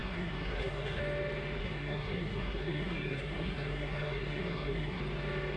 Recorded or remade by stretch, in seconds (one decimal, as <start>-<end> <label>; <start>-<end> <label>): 0.0-1.0 remade; 1.0-1.6 recorded; 1.6-5.0 remade; 5.0-5.6 recorded